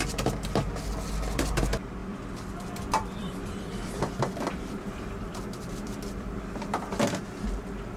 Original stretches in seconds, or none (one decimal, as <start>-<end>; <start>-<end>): 0.0-2.0; 2.6-3.2; 7.2-8.0

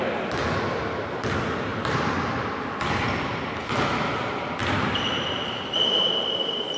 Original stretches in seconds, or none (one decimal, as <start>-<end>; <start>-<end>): 0.0-1.7; 3.1-4.6

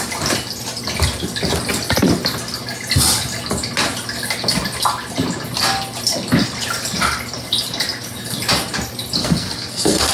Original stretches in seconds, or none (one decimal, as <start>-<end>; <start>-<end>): 0.0-9.2

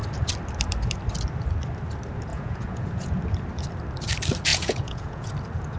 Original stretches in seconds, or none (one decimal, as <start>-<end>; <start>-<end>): 0.0-2.3; 3.2-4.5; 5.3-5.8

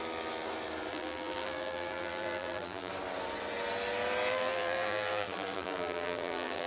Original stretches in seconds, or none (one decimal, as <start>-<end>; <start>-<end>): 0.0-0.9; 2.9-4.3

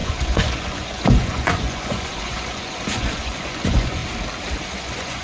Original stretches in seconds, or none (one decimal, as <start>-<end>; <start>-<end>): 4.0-4.8